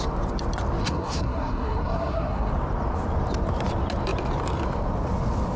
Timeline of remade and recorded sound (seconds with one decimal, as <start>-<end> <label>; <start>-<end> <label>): 0.0-0.8 recorded; 0.8-2.5 remade; 2.5-5.6 recorded